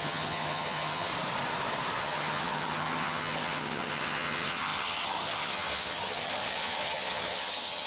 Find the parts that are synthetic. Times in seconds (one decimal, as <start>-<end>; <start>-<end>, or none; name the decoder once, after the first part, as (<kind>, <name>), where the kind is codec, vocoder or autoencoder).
0.0-1.1 (vocoder, HiFi-GAN); 2.0-7.9